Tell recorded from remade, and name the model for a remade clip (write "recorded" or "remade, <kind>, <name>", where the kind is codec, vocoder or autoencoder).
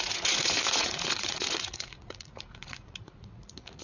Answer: remade, vocoder, Vocos